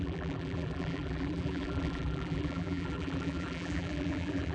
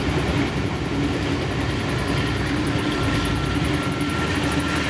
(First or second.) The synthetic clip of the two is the first